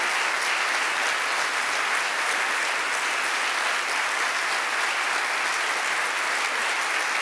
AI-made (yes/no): no